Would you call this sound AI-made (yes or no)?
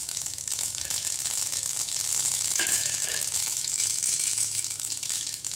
yes